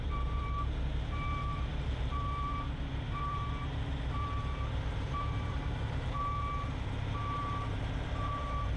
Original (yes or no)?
no